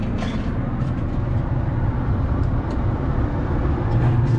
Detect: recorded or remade recorded